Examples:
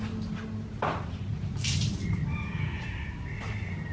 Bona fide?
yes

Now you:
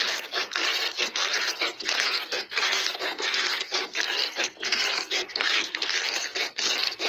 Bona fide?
no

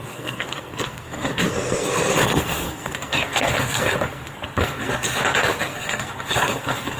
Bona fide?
no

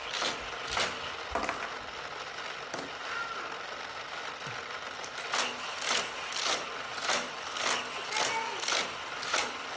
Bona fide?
yes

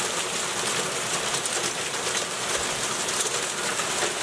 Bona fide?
yes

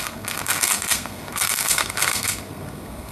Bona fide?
no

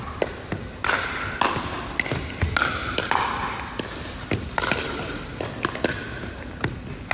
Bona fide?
yes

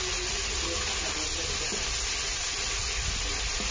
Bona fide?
yes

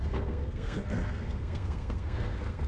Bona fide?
no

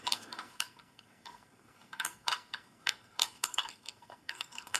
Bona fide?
no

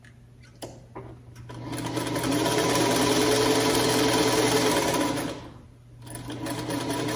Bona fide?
yes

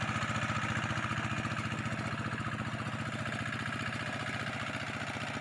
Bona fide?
yes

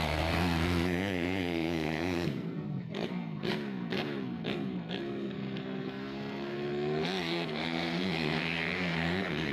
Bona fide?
no